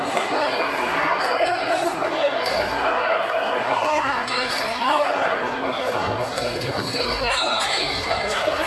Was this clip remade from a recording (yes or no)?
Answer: yes